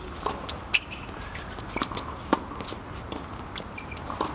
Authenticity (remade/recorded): recorded